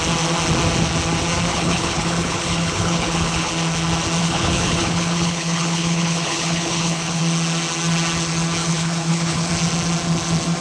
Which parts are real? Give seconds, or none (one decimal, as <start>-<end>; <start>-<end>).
0.0-1.5; 3.5-4.2; 7.2-8.6; 9.5-10.6